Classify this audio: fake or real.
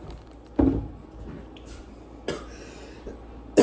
real